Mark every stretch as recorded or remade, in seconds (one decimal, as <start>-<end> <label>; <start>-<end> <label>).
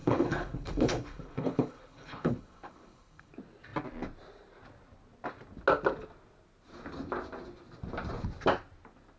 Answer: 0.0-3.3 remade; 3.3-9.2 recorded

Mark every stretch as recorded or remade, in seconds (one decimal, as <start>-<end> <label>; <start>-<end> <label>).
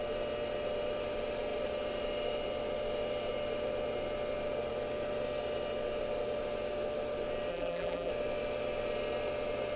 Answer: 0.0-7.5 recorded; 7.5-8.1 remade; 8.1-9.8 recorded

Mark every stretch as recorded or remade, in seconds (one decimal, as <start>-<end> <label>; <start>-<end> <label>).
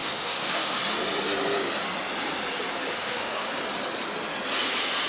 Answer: 0.0-0.8 remade; 0.8-2.9 recorded; 2.9-3.6 remade; 3.6-5.1 recorded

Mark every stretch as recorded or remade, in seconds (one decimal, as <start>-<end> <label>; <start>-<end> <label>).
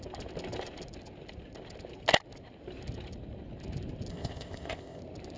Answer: 0.0-4.1 recorded; 4.1-5.0 remade; 5.0-5.4 recorded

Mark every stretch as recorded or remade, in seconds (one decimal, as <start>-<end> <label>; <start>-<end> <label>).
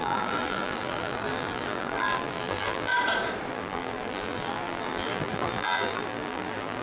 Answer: 0.0-2.9 remade; 2.9-3.5 recorded; 3.5-6.8 remade